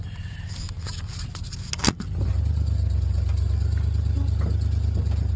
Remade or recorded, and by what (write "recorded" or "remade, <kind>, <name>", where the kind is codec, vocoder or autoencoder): recorded